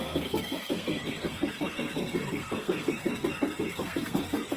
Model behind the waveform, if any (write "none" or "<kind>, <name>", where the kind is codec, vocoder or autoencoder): codec, SNAC